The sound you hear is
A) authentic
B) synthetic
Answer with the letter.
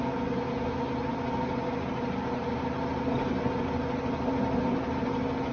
A